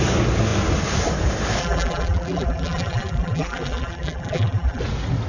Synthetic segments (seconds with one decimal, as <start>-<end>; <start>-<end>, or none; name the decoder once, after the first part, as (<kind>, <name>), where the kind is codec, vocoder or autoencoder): 1.6-4.8 (vocoder, BigVGAN v2)